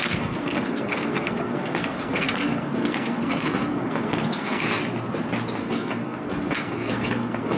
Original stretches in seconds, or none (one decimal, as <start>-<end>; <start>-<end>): 4.8-5.6